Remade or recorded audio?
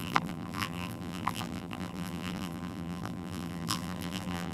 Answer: remade